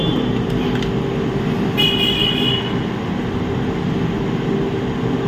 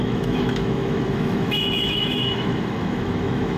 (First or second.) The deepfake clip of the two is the second